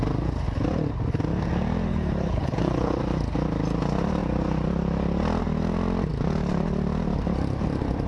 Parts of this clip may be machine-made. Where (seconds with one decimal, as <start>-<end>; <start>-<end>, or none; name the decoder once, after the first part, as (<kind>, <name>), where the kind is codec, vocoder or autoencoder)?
1.9-3.0 (codec, HILCodec)